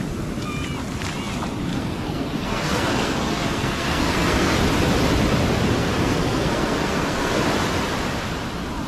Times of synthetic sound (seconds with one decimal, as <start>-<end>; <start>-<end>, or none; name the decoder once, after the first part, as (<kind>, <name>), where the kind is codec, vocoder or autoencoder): 1.7-4.6 (codec, SNAC); 5.8-7.4

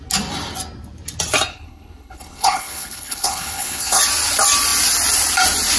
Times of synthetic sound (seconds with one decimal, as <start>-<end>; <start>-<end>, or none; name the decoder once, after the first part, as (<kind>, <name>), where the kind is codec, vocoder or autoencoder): 1.5-4.0 (codec, HILCodec)

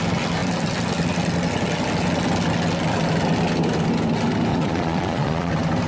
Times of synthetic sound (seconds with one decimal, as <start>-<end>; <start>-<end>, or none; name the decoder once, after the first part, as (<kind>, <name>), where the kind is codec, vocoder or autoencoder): 4.5-5.5 (vocoder, Vocos)

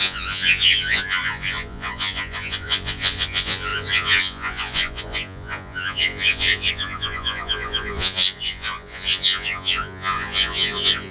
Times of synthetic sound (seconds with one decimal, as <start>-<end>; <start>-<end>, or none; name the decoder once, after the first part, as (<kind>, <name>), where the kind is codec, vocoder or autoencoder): 0.0-11.1 (vocoder, Vocos)